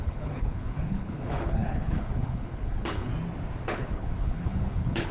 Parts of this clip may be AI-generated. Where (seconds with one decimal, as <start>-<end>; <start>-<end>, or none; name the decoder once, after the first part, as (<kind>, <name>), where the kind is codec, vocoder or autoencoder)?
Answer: 0.0-3.1 (codec, HILCodec); 3.7-5.1